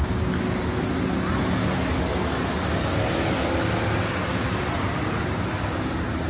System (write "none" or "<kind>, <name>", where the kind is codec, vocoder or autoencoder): none